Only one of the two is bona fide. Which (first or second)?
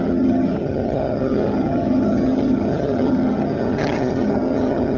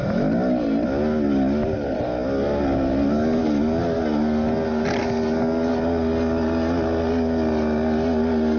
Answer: second